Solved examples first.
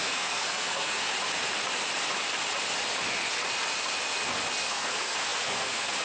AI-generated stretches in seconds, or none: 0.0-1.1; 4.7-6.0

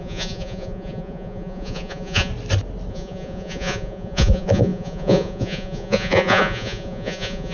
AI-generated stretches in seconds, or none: 0.0-2.3; 2.9-7.5

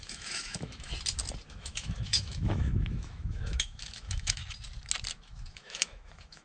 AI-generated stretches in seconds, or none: 0.0-0.9; 1.5-4.4; 5.1-6.4

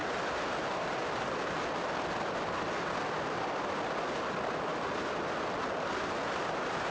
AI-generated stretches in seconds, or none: 4.7-5.2